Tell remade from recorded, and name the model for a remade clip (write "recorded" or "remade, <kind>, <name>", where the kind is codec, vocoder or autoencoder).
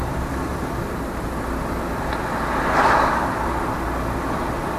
recorded